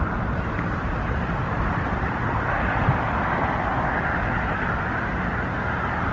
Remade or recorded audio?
recorded